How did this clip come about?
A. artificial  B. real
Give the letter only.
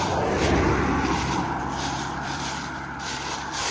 A